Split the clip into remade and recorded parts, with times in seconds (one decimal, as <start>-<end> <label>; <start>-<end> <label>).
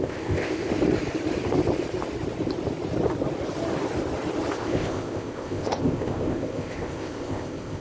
0.0-0.7 remade; 0.7-4.5 recorded; 4.5-7.8 remade